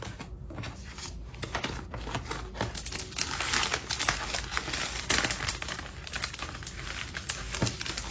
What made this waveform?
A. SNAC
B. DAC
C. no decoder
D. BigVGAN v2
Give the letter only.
C